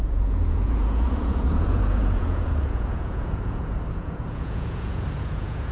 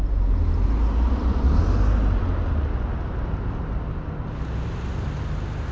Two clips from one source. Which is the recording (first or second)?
second